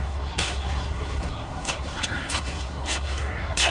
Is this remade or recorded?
remade